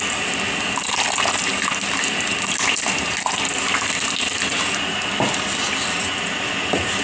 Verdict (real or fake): real